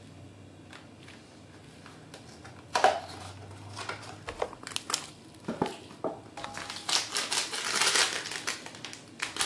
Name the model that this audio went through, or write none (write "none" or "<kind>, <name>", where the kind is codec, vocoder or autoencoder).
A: none